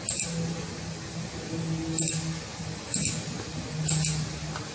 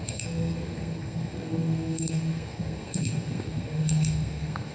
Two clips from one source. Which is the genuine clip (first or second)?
first